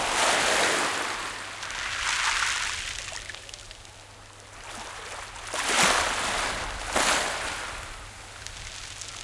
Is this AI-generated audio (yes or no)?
no